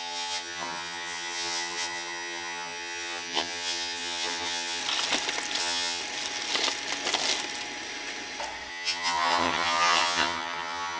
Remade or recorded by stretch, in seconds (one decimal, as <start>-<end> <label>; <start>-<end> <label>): 0.0-4.8 remade; 4.8-5.6 recorded; 5.6-6.0 remade; 6.0-8.7 recorded; 8.7-11.0 remade